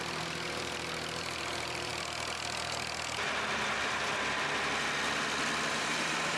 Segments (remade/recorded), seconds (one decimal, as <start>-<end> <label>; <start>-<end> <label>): 0.0-1.9 remade; 1.9-5.7 recorded; 5.7-6.4 remade